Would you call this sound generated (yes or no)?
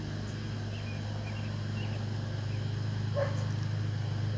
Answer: no